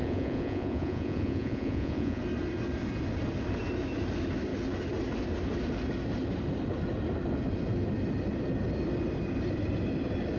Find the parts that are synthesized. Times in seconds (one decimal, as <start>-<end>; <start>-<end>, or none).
0.0-2.2